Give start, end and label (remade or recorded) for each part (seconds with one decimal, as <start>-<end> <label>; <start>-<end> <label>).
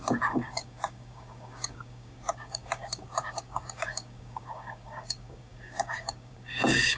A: 0.0-7.0 remade